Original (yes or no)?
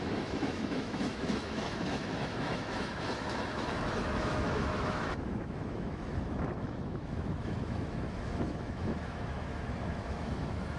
no